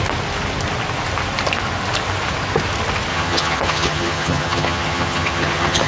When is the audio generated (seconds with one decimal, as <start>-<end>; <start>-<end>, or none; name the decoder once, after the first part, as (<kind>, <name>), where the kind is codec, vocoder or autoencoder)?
3.1-5.9 (vocoder, HiFi-GAN)